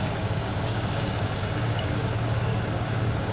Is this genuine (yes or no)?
no